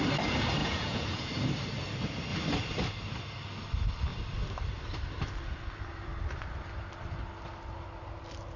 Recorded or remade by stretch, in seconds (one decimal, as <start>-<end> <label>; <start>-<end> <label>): 0.0-0.6 recorded; 0.6-1.3 remade; 1.3-8.6 recorded